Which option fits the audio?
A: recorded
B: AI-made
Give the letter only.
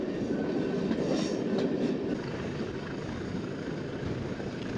A